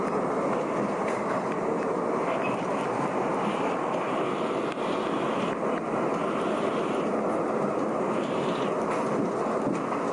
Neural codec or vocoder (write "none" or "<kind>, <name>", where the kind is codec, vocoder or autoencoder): none